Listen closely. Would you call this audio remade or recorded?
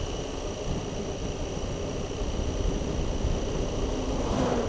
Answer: recorded